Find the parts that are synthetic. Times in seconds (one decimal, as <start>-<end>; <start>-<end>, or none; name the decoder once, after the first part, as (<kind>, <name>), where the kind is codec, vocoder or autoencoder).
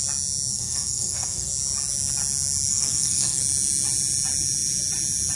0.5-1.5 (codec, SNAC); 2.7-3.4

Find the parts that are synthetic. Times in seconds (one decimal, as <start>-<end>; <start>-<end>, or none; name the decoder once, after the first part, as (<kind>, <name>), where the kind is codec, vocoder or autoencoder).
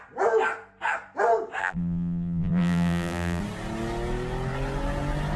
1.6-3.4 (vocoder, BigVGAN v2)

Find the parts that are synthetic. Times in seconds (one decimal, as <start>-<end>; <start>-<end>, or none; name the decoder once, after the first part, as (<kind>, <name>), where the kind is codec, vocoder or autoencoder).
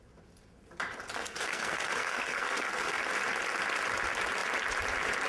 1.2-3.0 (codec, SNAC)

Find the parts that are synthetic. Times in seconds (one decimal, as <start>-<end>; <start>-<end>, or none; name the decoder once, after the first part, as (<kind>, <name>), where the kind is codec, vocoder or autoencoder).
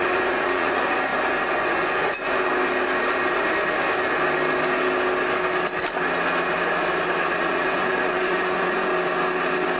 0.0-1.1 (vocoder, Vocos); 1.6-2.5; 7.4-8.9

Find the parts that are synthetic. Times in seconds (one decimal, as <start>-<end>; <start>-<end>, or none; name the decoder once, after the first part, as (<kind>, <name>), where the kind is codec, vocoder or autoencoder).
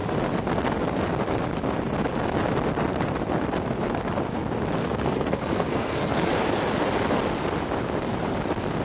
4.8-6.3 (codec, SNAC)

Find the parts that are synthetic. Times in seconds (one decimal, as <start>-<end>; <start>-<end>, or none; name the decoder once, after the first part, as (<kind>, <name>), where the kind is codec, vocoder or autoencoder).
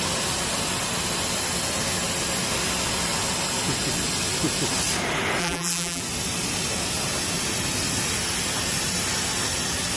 5.4-6.0 (vocoder, BigVGAN v2)